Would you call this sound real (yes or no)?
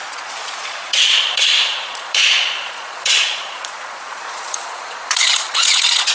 no